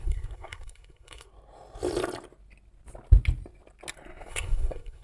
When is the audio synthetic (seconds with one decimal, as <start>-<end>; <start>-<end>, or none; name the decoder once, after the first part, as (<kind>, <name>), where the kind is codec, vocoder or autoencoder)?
0.0-1.3 (codec, SNAC); 4.3-5.0